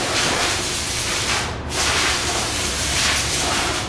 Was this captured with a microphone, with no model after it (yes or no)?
no